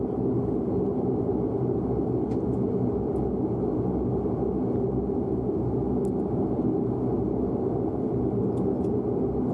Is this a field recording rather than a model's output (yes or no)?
yes